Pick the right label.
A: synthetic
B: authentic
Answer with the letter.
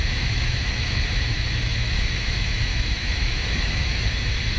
A